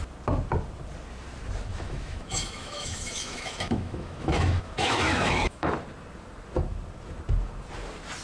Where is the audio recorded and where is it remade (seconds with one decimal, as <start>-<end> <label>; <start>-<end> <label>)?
0.0-1.7 recorded; 1.7-5.7 remade; 5.7-8.2 recorded